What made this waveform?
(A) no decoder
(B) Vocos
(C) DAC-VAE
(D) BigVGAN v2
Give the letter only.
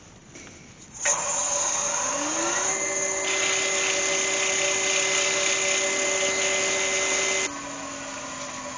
A